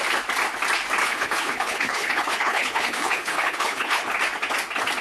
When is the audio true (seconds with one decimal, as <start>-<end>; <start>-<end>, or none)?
0.0-1.0; 4.0-5.0